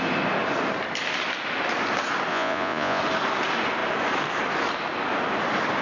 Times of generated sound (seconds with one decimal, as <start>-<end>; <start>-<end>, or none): 2.3-3.0